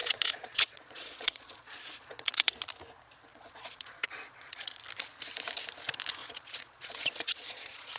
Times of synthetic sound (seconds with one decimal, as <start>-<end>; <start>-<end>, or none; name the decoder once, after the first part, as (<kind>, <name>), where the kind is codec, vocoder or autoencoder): 0.0-2.5 (vocoder, Vocos); 3.3-4.8; 6.2-8.0